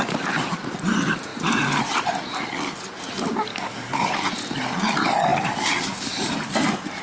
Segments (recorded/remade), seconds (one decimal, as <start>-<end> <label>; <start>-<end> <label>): 0.0-3.5 recorded; 3.5-4.0 remade; 4.0-7.0 recorded